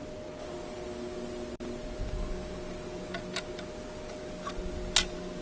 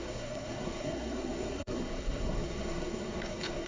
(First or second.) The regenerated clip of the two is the second